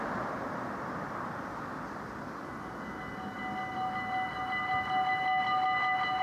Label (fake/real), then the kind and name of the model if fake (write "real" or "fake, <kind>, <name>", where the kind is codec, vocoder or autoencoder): real